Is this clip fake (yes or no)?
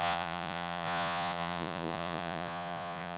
yes